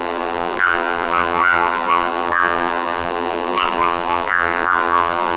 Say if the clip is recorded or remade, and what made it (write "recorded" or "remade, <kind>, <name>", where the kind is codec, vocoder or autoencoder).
remade, vocoder, BigVGAN v2